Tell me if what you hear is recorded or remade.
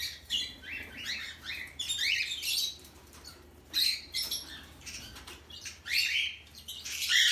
remade